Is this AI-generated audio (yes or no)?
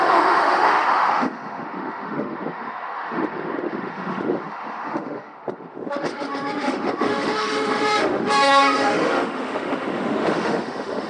yes